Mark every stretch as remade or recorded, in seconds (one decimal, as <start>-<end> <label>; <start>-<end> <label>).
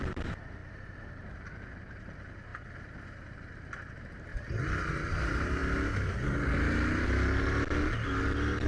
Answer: 0.0-2.5 remade; 2.5-3.3 recorded; 3.3-4.3 remade; 4.3-4.9 recorded; 4.9-5.6 remade; 5.6-8.7 recorded